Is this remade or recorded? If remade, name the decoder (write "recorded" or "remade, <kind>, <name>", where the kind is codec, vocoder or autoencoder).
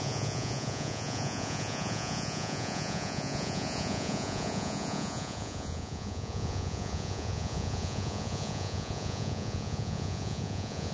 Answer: remade, vocoder, Vocos